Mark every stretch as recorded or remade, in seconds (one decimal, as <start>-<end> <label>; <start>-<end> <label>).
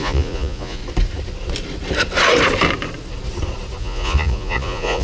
0.0-0.8 remade; 0.8-3.8 recorded; 3.8-5.0 remade